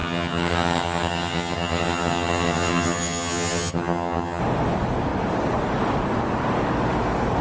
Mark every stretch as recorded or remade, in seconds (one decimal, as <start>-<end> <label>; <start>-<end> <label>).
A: 0.0-4.4 remade; 4.4-7.4 recorded